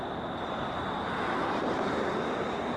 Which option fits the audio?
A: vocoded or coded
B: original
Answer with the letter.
B